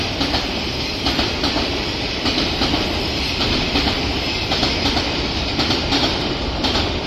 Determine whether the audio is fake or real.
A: fake